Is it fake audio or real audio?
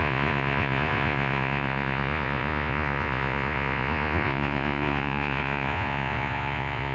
fake